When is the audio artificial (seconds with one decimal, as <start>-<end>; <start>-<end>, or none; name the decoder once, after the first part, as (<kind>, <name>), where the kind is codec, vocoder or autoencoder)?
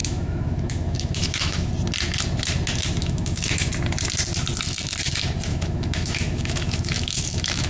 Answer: 0.0-1.7 (autoencoder, DAC-VAE); 3.0-3.7; 5.5-7.7